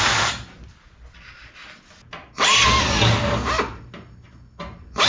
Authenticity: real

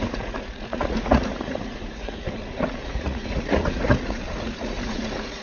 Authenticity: fake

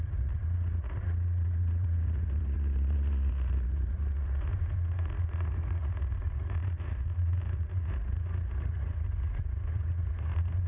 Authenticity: fake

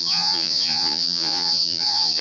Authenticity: fake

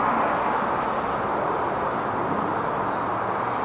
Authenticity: real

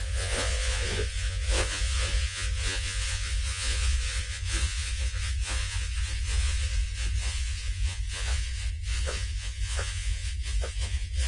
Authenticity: fake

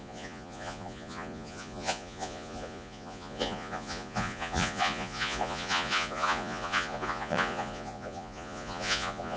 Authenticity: fake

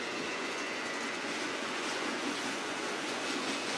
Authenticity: fake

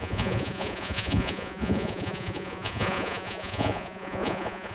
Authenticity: fake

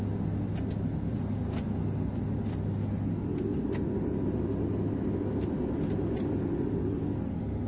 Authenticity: real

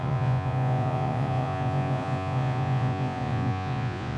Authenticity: fake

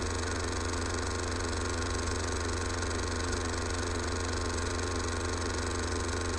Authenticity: fake